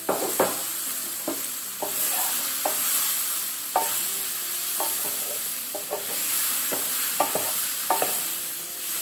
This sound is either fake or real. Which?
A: fake